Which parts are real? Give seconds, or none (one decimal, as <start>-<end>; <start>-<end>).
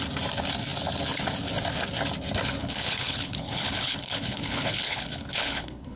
0.0-2.6